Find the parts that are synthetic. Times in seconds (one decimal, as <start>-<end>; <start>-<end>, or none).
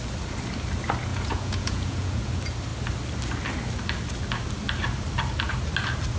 1.1-2.3